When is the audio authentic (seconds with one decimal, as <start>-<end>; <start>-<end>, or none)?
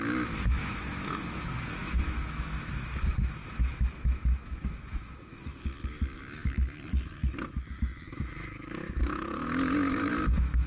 none